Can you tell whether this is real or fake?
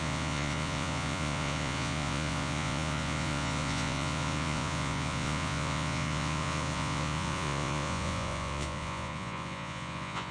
fake